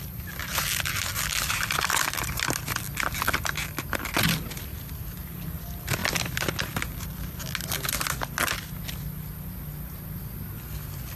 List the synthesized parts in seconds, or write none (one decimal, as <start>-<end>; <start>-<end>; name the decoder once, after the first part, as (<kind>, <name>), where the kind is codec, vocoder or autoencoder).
none